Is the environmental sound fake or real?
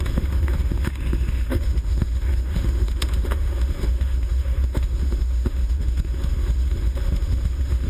fake